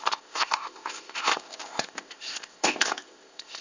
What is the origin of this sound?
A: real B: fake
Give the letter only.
B